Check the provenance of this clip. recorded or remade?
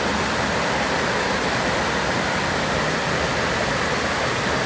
recorded